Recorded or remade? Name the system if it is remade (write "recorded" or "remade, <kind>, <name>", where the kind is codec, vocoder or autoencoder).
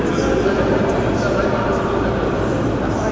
recorded